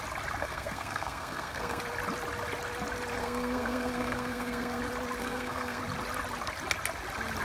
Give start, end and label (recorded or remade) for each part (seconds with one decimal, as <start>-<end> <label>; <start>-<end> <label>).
0.0-0.4 recorded; 0.4-1.8 remade; 1.8-3.2 recorded; 3.2-4.8 remade; 4.8-5.2 recorded; 5.2-5.8 remade; 5.8-7.4 recorded